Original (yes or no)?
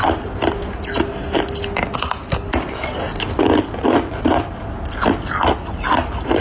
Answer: yes